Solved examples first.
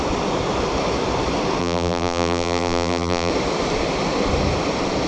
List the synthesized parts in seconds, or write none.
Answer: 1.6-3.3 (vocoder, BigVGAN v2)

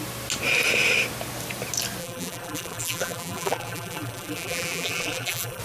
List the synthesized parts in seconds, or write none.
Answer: 2.0-5.6 (vocoder, BigVGAN v2)

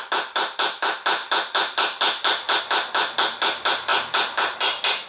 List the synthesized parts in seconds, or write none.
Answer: none